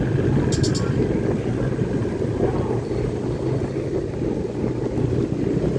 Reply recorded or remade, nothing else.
recorded